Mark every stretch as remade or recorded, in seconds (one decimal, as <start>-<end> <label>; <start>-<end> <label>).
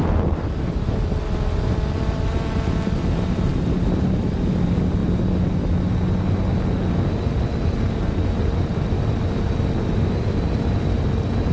0.0-11.5 recorded